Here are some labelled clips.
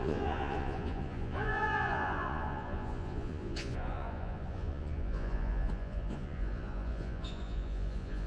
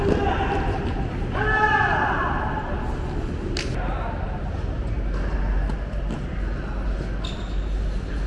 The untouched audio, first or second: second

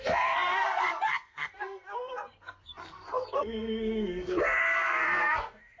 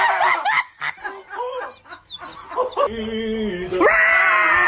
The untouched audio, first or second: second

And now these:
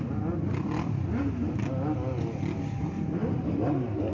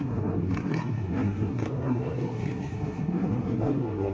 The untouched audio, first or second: first